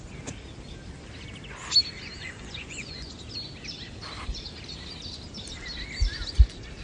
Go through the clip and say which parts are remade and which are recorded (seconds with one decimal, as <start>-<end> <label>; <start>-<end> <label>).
0.0-2.2 recorded; 2.2-3.1 remade; 3.1-6.8 recorded